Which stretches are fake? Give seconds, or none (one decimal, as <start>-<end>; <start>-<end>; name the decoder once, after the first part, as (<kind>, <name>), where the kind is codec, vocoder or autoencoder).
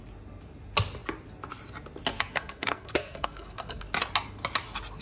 2.1-3.8 (codec, SNAC)